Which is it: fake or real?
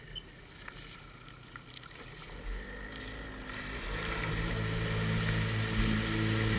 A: real